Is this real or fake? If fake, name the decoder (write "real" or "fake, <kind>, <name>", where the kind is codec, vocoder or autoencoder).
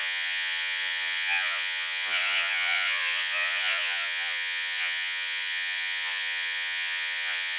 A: fake, vocoder, Vocos